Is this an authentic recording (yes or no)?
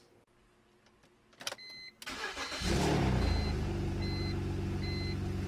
yes